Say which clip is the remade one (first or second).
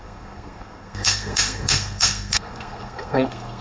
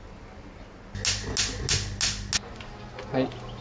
first